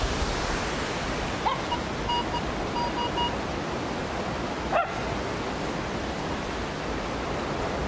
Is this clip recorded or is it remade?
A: recorded